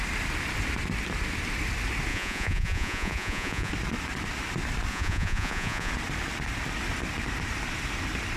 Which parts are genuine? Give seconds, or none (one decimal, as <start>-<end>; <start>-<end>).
0.0-2.1; 3.7-4.9; 5.9-8.4